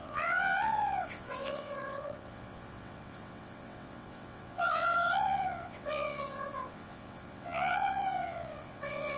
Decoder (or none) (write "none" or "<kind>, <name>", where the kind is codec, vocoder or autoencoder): vocoder, WaveNeXt